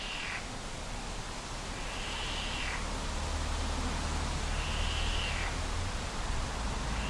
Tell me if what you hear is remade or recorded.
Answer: recorded